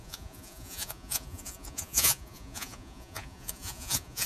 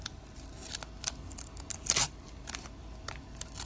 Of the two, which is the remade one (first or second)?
first